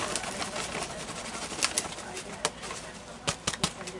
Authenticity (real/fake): real